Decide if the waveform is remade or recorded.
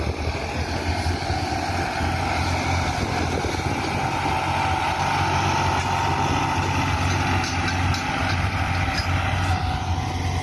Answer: recorded